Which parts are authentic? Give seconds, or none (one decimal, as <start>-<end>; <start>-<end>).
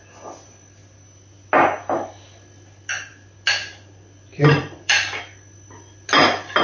0.0-4.3; 5.2-6.6